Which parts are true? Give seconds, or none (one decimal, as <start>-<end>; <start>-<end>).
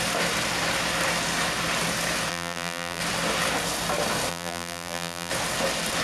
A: 0.0-2.3; 3.0-4.3; 5.3-6.0